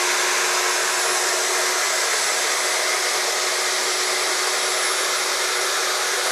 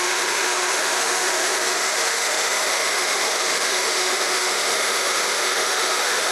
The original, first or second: first